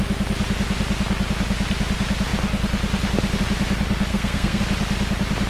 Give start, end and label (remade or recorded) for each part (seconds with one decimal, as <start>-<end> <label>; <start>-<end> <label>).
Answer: 0.0-4.1 recorded; 4.1-4.6 remade; 4.6-5.5 recorded